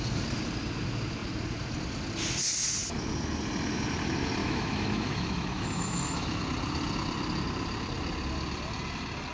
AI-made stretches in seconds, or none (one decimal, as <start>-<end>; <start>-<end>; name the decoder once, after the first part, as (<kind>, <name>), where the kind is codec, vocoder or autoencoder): 4.4-6.4 (autoencoder, DAC-VAE)